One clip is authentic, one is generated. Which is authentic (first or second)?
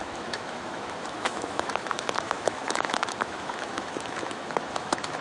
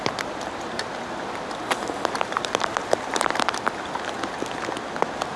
second